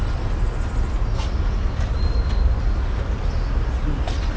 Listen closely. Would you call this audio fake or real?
real